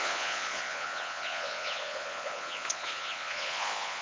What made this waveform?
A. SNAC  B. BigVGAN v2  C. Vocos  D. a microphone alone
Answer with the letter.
C